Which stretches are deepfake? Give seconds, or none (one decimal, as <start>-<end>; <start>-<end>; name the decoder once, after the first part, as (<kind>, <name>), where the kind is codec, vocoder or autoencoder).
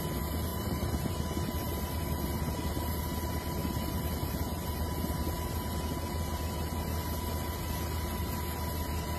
0.5-1.1 (vocoder, BigVGAN v2)